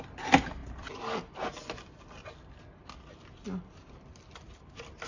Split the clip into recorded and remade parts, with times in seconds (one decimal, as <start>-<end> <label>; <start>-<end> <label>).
0.0-5.1 recorded